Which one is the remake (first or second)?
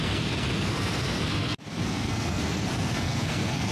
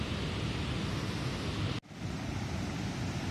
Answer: first